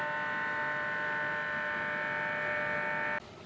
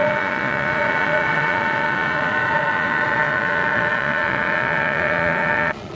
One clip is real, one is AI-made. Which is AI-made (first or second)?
second